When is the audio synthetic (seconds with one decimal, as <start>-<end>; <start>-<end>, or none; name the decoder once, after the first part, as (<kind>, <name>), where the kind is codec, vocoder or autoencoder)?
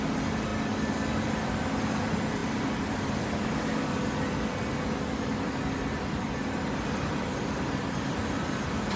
none